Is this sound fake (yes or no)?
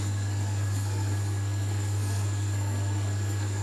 yes